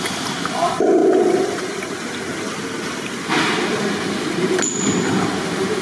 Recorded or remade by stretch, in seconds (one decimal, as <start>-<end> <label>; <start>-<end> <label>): 0.0-5.8 recorded